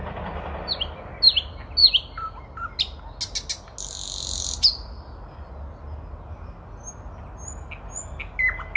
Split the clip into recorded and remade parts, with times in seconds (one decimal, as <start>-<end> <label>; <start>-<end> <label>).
0.0-8.8 recorded